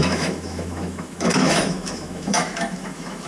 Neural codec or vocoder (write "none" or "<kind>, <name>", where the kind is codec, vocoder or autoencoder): autoencoder, DAC-VAE